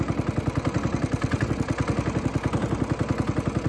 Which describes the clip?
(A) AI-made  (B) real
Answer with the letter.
B